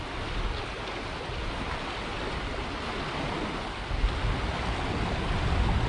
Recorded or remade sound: recorded